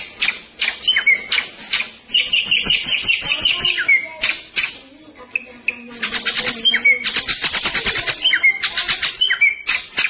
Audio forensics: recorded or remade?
recorded